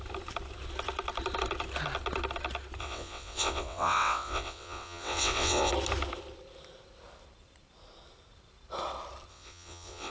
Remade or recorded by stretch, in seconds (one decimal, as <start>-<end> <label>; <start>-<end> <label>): 0.0-2.8 recorded; 2.8-5.7 remade; 5.7-9.3 recorded; 9.3-10.1 remade